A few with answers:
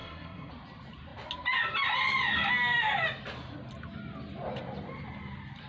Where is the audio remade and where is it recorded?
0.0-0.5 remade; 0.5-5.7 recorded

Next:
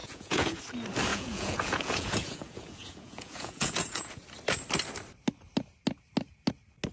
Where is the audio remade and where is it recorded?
0.0-0.6 remade; 0.6-1.1 recorded; 1.1-4.2 remade; 4.2-6.9 recorded

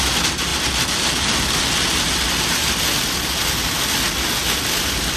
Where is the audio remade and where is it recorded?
0.0-5.2 recorded